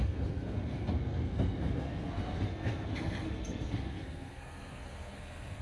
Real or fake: fake